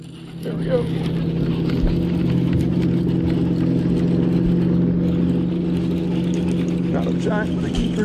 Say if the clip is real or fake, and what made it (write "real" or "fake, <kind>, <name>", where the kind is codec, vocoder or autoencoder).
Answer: real